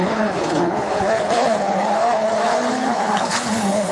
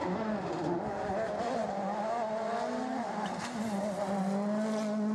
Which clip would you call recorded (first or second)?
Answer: second